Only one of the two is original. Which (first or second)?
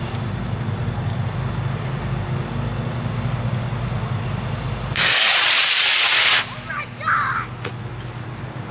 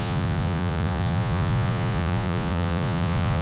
first